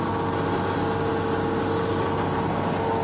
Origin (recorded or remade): recorded